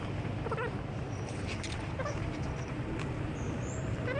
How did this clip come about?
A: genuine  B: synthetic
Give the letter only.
A